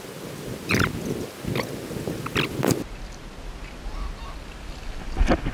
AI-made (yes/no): no